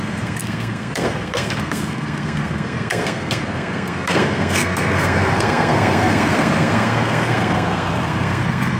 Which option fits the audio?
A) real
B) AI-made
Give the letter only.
B